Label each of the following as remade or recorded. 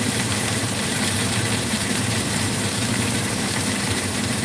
remade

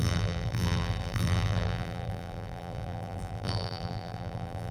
remade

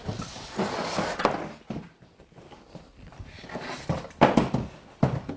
recorded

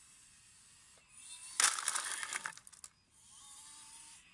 recorded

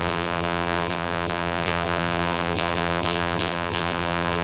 remade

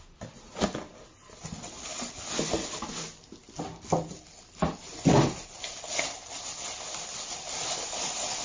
recorded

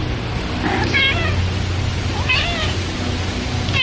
recorded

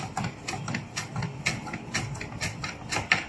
recorded